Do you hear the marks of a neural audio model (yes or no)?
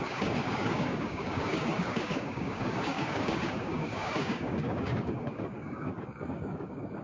yes